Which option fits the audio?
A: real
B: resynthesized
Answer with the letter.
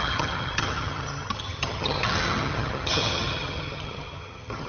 B